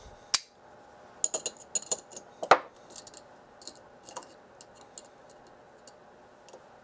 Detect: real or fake real